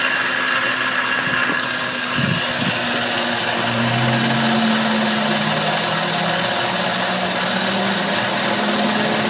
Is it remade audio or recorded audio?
recorded